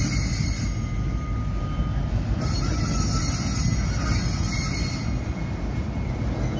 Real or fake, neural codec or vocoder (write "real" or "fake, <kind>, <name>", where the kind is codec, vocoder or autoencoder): real